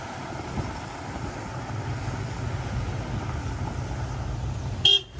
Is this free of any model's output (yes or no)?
yes